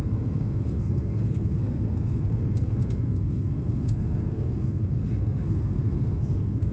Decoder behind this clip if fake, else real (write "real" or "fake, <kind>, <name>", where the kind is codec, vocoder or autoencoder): fake, codec, SNAC